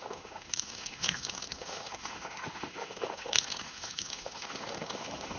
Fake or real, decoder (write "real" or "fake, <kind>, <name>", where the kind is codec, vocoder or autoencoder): fake, autoencoder, DAC-VAE